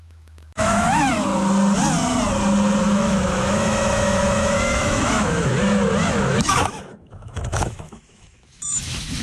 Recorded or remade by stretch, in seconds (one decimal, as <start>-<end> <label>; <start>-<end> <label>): 0.0-1.3 remade; 1.3-2.8 recorded; 2.8-5.5 remade; 5.5-6.1 recorded; 6.1-9.2 remade